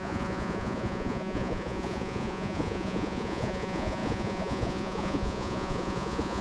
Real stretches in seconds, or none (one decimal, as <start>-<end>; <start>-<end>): none